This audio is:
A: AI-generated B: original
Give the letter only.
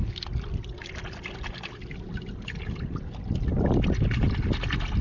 B